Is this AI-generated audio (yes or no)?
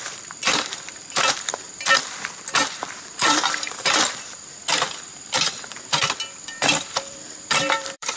yes